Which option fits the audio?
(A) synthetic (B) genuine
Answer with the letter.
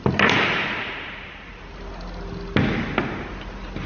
B